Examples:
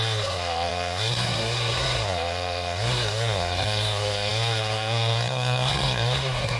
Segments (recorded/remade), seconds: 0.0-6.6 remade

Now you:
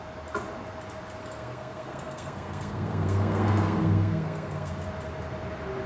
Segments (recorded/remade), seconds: 0.0-1.2 recorded; 1.2-4.7 remade; 4.7-5.9 recorded

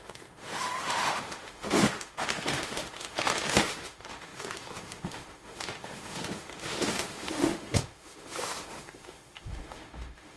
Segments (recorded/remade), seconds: 0.0-10.4 remade

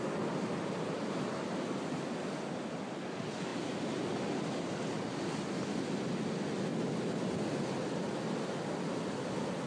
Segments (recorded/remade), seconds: 0.0-9.7 recorded

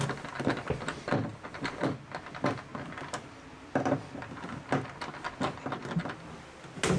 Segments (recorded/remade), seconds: 0.0-1.3 recorded; 1.3-1.9 remade; 1.9-7.0 recorded